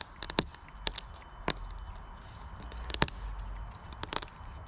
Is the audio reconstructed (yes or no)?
no